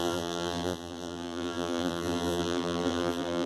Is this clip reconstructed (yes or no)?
yes